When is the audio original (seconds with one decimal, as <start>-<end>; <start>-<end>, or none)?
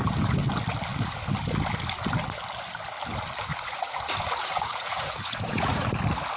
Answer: 0.0-3.5; 5.9-6.4